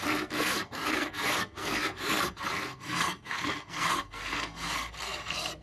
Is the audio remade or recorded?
remade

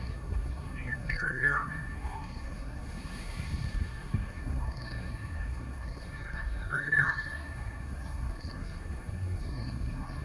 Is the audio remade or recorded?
remade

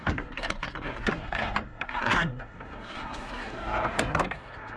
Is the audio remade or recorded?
remade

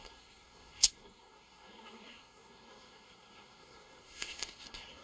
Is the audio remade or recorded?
remade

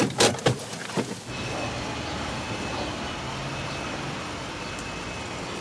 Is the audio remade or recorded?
recorded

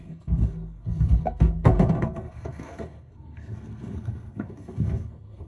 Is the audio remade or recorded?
remade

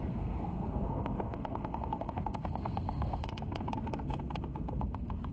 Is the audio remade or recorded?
remade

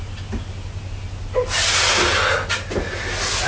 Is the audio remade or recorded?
recorded